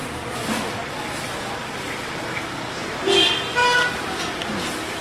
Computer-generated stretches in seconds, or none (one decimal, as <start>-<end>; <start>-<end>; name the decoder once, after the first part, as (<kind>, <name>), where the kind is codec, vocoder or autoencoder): 0.0-0.7 (vocoder, BigVGAN v2); 1.6-2.8; 3.6-4.3